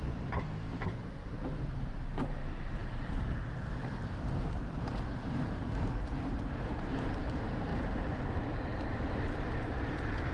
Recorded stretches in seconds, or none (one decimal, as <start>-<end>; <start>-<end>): 1.4-1.9; 7.7-8.3